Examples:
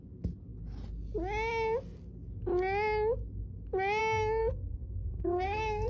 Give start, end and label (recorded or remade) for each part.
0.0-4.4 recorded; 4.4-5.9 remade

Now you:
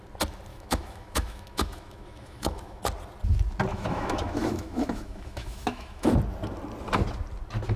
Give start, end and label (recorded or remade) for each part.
0.0-0.5 recorded; 0.5-2.8 remade; 2.8-3.7 recorded; 3.7-6.1 remade; 6.1-7.8 recorded

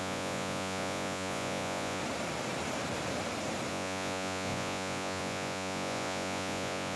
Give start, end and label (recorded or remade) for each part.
0.0-2.0 remade; 2.0-3.7 recorded; 3.7-7.0 remade